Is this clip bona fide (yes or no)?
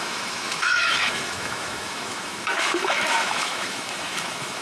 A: no